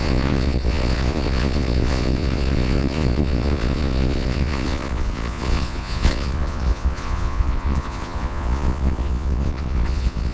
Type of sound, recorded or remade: remade